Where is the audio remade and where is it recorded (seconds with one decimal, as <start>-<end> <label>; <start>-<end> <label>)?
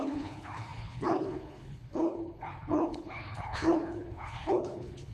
0.0-5.1 remade